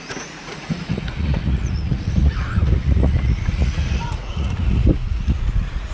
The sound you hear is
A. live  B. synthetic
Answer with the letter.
B